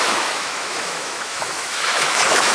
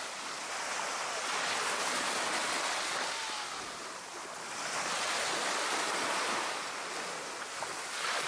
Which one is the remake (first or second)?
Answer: first